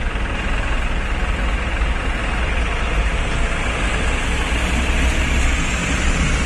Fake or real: real